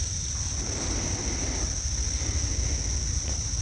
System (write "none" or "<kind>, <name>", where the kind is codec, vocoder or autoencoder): none